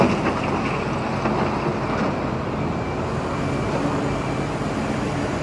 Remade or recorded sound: recorded